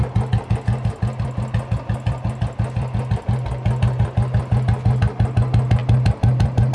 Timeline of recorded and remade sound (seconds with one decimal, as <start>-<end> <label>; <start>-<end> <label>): 0.0-6.7 recorded